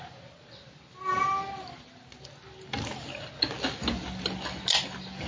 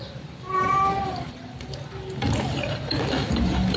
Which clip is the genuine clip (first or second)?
first